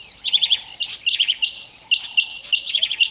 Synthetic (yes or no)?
no